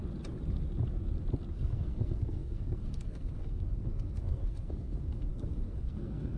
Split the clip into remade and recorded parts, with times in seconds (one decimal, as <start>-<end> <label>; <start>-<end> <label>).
0.0-1.5 recorded; 1.5-6.4 remade